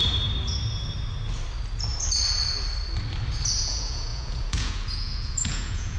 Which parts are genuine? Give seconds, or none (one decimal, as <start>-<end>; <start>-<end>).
0.0-3.6

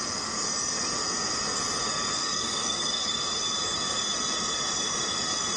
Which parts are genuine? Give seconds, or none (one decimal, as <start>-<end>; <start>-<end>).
0.0-2.2; 3.1-5.6